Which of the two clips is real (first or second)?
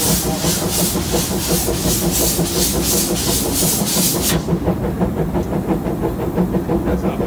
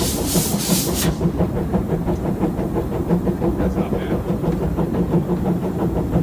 first